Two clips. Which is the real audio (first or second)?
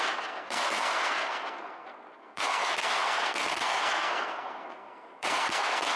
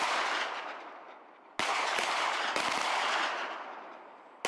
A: second